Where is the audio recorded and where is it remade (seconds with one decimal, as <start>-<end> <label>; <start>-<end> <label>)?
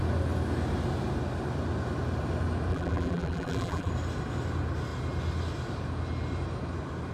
0.0-2.7 recorded; 2.7-3.9 remade; 3.9-7.1 recorded